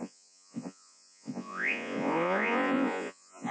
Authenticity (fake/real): fake